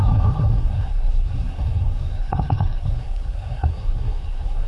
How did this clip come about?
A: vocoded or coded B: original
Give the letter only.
A